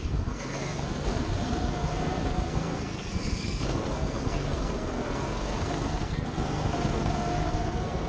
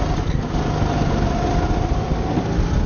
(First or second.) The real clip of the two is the second